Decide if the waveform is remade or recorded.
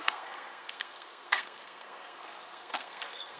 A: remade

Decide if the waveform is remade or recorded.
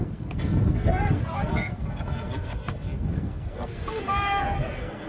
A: remade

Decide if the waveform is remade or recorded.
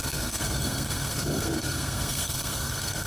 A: remade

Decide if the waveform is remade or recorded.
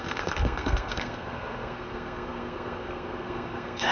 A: remade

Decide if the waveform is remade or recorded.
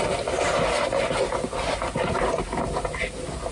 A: recorded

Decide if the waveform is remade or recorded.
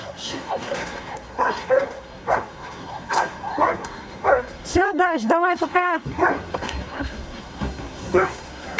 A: remade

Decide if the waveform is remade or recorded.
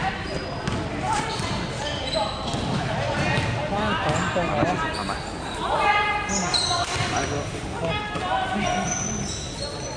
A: recorded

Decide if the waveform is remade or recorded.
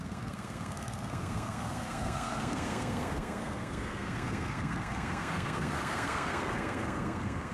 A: remade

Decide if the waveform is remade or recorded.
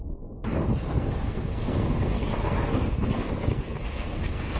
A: remade